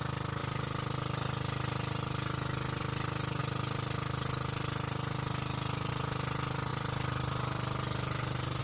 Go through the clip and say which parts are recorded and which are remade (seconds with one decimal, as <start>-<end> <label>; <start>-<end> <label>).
0.0-6.7 recorded; 6.7-8.6 remade